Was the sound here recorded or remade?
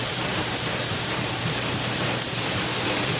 remade